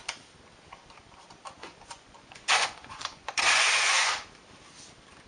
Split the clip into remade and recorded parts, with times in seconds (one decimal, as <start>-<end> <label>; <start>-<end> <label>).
0.0-1.6 recorded; 1.6-4.1 remade; 4.1-5.3 recorded

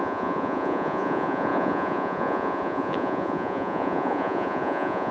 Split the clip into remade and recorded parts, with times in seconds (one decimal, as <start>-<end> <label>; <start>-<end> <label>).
0.0-5.1 remade

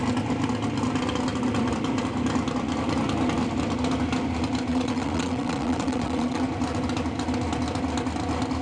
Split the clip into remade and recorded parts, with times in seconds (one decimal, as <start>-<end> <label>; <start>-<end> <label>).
0.0-4.7 recorded; 4.7-6.4 remade; 6.4-8.6 recorded

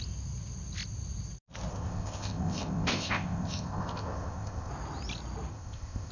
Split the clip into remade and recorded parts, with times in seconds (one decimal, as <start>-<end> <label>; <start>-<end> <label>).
0.0-1.7 recorded; 1.7-4.7 remade; 4.7-5.5 recorded; 5.5-6.1 remade